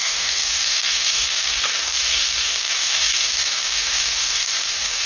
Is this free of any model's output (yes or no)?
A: no